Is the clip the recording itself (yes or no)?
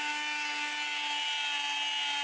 yes